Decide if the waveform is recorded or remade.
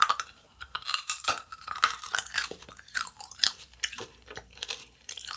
remade